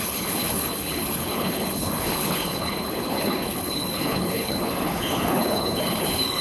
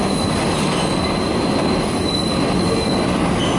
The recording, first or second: second